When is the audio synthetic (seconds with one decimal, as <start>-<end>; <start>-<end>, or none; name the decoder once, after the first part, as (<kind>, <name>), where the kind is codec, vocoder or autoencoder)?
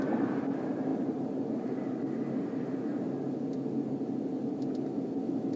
none